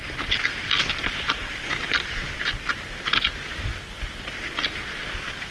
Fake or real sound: real